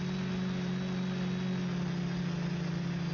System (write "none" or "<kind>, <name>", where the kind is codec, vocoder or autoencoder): none